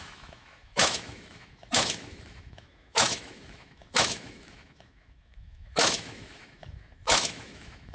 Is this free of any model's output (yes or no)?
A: no